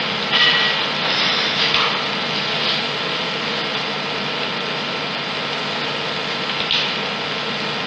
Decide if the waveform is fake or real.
real